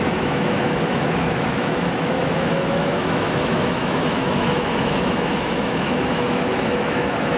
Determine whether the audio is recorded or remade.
remade